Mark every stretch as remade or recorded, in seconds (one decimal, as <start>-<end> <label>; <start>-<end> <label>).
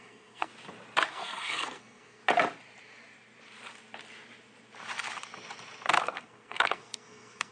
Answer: 0.0-0.5 remade; 0.5-1.1 recorded; 1.1-2.2 remade; 2.2-6.0 recorded; 6.0-7.5 remade